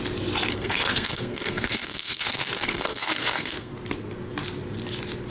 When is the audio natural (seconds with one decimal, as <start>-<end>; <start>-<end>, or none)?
0.0-0.5; 3.7-5.3